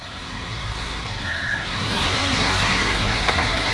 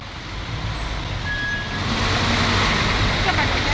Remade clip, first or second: first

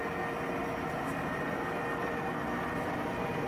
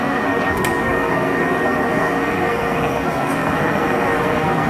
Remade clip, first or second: second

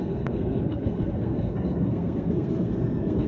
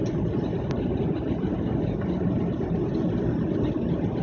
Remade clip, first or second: first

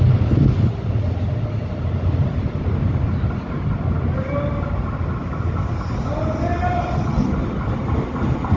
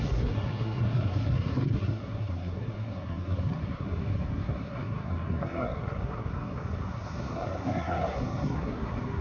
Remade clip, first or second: second